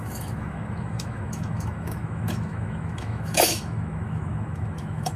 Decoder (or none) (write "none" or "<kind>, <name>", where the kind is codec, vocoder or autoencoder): autoencoder, DAC-VAE